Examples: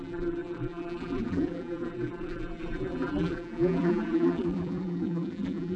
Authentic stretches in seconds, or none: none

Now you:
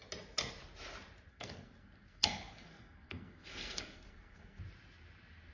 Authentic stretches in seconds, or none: 0.0-1.3; 4.6-5.5

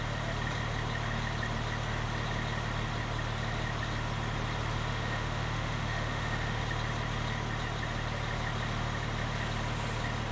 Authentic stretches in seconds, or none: 0.0-4.9; 6.6-10.3

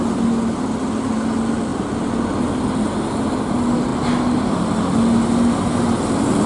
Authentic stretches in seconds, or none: 0.0-6.5

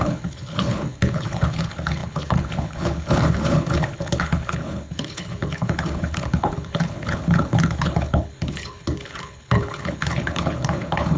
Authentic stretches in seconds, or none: none

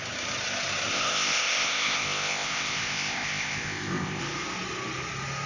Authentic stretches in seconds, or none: 0.0-0.9; 4.2-5.5

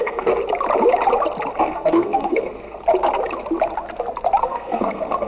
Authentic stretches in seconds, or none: 0.4-1.6; 2.8-4.4